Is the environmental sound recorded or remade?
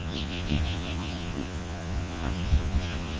remade